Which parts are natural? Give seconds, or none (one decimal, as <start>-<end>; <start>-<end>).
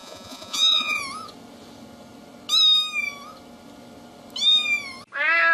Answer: 1.0-5.5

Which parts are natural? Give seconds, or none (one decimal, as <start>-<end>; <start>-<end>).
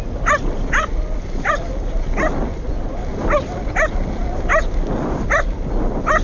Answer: 0.0-6.2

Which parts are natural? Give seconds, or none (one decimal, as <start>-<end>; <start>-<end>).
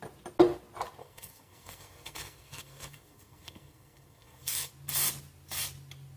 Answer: 0.0-1.0; 4.7-6.2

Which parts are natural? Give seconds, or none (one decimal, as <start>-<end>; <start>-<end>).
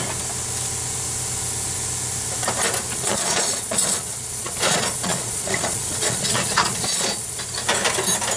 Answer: 0.0-2.9; 7.4-8.4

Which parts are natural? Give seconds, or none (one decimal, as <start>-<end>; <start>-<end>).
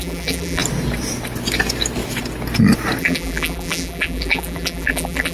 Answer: 0.6-3.0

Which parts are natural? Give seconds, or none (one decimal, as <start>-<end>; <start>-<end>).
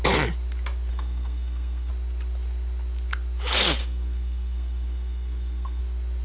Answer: 0.0-0.9; 1.9-3.8; 5.8-6.2